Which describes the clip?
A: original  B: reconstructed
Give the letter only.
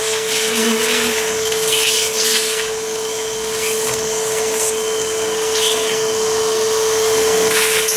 B